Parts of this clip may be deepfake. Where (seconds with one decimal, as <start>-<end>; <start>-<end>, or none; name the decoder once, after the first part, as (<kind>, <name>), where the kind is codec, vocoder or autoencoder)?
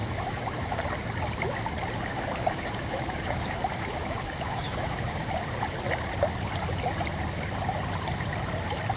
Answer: 0.0-0.8 (autoencoder, DAC-VAE); 2.1-5.3